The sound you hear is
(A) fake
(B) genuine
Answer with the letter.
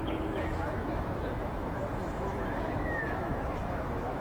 A